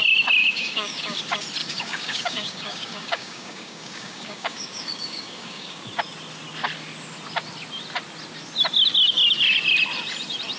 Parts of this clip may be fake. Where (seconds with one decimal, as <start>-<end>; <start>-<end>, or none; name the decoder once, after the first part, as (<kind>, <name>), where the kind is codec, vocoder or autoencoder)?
0.4-1.2 (codec, DAC); 1.6-5.8

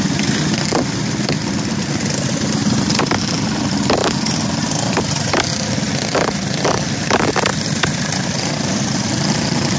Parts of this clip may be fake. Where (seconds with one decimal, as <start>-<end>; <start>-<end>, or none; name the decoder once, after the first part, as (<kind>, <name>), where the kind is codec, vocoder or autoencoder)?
none

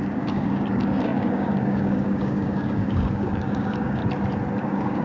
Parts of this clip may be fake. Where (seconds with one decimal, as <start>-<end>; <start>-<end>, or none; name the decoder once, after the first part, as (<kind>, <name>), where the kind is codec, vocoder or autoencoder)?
0.0-4.0 (codec, DAC); 4.6-5.0